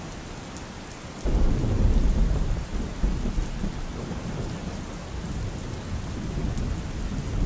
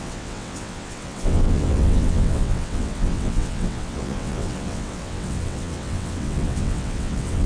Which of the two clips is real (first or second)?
first